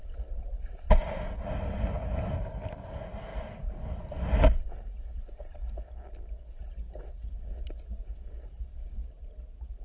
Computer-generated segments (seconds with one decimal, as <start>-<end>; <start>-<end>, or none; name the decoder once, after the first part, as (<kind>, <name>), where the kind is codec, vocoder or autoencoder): none